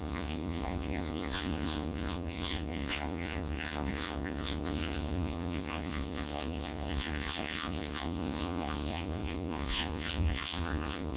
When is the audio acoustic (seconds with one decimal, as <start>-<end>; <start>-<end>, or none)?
none